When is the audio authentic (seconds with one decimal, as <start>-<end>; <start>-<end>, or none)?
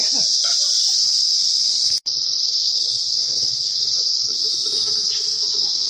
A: 0.0-1.0